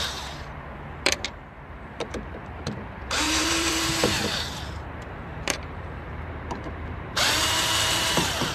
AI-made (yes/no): yes